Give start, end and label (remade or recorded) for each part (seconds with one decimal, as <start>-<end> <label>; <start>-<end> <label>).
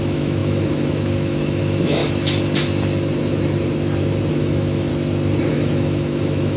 0.0-2.0 remade; 2.0-4.3 recorded; 4.3-4.9 remade; 4.9-5.5 recorded; 5.5-6.6 remade